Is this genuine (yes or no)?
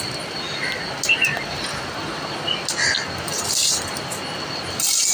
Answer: yes